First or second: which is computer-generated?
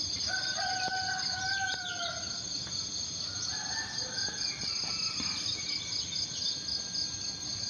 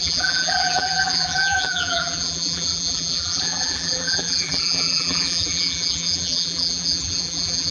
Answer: second